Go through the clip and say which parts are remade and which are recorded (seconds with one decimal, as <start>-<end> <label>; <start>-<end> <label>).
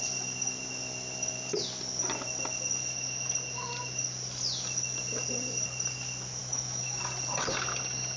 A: 0.0-6.4 recorded; 6.4-7.0 remade; 7.0-8.2 recorded